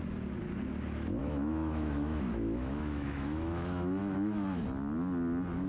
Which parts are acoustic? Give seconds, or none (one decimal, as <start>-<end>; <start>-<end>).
0.0-1.2; 4.6-5.7